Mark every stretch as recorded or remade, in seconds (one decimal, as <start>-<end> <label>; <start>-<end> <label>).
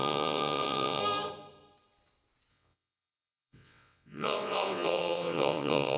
0.0-1.0 remade; 1.0-2.5 recorded; 2.5-6.0 remade